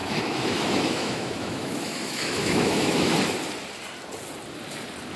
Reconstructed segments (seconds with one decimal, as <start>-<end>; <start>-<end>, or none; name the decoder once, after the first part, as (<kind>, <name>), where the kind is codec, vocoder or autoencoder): 0.0-3.1 (autoencoder, DAC-VAE)